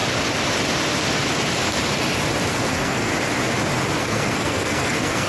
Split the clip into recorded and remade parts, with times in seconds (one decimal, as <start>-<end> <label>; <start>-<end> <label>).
0.0-2.5 recorded; 2.5-3.1 remade; 3.1-4.0 recorded; 4.0-5.3 remade

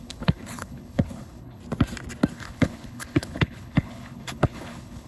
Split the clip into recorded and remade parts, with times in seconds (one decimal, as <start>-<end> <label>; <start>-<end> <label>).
0.0-1.6 remade; 1.6-2.3 recorded; 2.3-5.1 remade

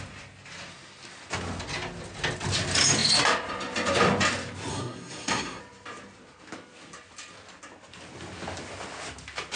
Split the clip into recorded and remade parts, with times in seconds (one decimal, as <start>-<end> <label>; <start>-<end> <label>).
0.0-4.7 recorded; 4.7-5.6 remade; 5.6-9.6 recorded

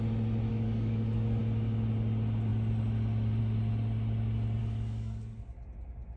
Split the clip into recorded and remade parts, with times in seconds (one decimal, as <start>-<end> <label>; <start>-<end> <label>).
0.0-0.5 recorded; 0.5-1.4 remade; 1.4-4.6 recorded; 4.6-5.4 remade; 5.4-6.2 recorded